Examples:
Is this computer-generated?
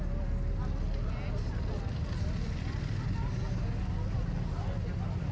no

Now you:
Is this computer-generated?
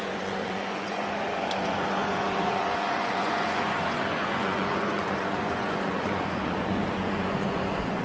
yes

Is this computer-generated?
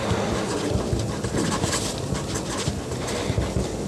no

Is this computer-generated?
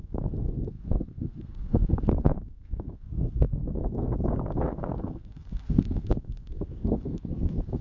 yes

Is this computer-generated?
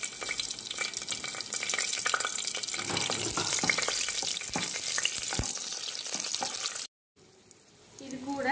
no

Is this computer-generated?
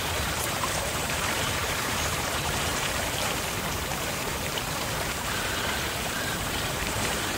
yes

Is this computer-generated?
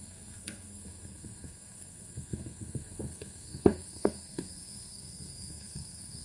yes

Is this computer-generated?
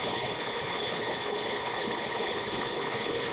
yes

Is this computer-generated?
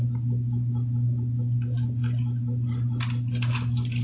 no